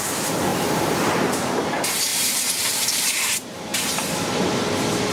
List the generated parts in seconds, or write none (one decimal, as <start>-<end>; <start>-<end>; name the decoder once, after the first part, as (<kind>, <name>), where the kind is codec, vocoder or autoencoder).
0.5-1.7 (vocoder, BigVGAN v2); 2.1-3.0